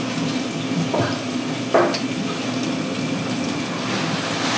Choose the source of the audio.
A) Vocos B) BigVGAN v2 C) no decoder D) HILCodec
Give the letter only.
C